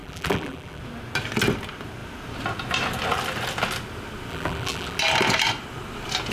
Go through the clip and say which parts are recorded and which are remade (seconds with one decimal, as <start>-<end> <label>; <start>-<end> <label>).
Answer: 0.0-0.8 remade; 0.8-4.3 recorded; 4.3-5.0 remade; 5.0-6.3 recorded